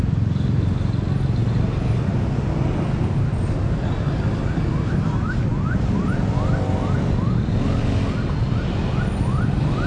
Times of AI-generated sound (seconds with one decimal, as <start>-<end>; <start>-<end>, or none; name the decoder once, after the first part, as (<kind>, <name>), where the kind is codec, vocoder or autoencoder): none

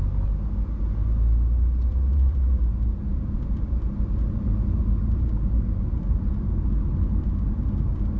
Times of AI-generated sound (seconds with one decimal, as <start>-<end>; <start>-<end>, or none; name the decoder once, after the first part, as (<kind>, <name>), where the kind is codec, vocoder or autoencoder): 1.9-6.5 (vocoder, BigVGAN v2)

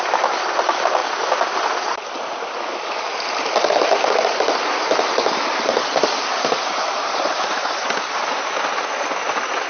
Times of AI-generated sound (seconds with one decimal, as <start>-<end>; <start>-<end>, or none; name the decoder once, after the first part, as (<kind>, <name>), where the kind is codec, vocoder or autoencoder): none

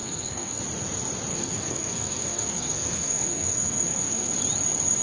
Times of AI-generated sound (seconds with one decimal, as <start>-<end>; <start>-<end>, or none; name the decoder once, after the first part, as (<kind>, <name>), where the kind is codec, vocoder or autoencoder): 0.0-0.6 (codec, SNAC); 1.3-4.3

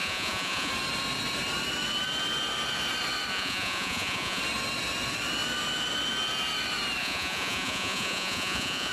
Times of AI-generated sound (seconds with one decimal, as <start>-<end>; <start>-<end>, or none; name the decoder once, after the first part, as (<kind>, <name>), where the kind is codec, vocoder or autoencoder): 0.0-0.7 (vocoder, Vocos); 3.3-4.4; 7.0-8.9

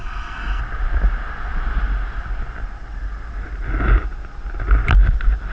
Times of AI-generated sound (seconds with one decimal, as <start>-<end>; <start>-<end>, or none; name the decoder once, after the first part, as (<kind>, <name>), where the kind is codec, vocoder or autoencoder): 0.0-0.6 (codec, SNAC)

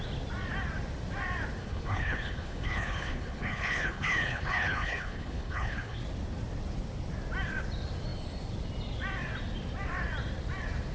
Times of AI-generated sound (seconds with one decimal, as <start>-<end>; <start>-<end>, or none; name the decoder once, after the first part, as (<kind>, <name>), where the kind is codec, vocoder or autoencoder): 1.6-6.0 (codec, HILCodec)